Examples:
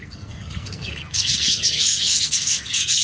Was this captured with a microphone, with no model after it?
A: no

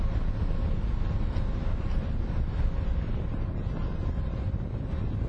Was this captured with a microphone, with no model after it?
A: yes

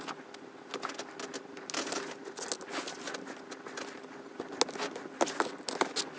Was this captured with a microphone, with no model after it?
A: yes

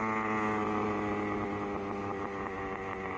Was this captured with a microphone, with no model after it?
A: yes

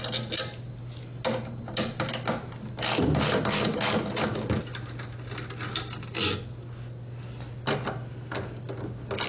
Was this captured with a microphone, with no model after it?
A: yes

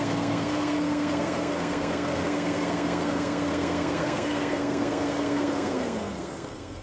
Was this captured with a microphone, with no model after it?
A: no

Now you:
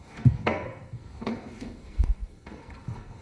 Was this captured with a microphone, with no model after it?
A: no